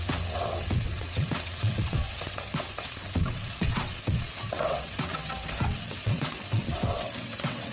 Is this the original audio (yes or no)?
no